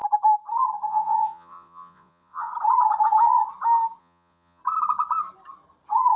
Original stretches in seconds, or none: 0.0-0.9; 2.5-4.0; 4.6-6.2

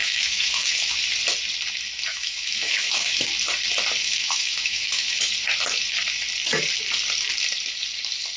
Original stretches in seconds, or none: 1.0-2.1; 3.2-4.0; 5.2-8.4